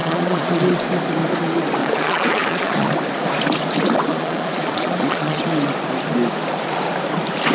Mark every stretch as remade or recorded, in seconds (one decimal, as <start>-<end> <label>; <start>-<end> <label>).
0.0-0.6 remade; 0.6-1.8 recorded; 1.8-2.9 remade; 2.9-4.1 recorded; 4.1-5.4 remade; 5.4-7.5 recorded